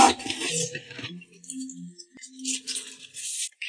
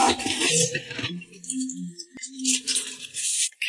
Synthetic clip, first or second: second